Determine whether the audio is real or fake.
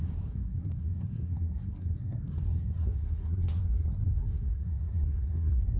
fake